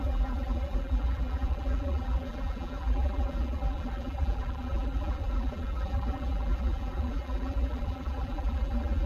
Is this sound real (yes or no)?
no